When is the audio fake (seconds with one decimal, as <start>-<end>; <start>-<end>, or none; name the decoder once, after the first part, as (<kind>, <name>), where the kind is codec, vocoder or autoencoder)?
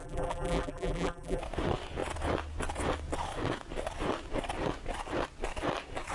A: 0.0-1.4 (vocoder, BigVGAN v2)